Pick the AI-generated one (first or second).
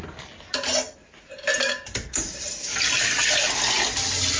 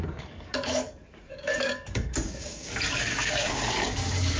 second